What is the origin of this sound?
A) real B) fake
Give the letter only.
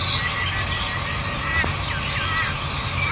A